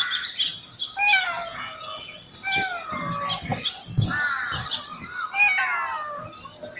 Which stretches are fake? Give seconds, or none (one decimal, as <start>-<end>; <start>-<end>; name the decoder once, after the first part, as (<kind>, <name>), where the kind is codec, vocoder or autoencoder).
1.5-2.1 (vocoder, Vocos)